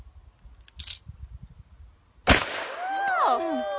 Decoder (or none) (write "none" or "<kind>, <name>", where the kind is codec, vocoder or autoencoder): none